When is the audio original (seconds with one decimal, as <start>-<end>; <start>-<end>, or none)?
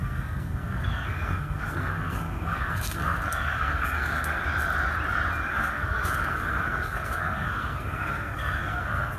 4.4-5.5